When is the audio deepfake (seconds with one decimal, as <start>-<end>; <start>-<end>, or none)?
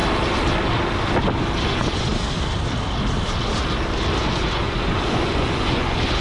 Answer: 1.7-2.1; 4.2-6.2